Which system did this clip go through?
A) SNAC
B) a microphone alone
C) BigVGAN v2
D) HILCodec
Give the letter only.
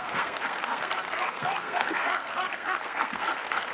A